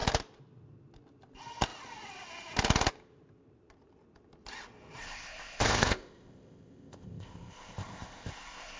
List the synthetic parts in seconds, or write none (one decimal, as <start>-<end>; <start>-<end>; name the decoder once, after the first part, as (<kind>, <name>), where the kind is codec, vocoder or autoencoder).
5.0-8.8 (codec, ZipCodec)